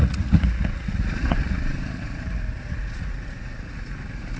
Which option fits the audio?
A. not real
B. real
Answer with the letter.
A